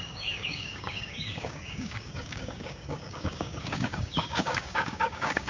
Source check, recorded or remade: remade